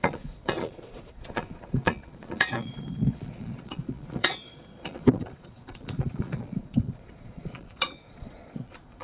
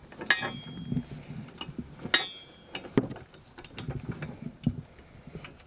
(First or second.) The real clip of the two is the second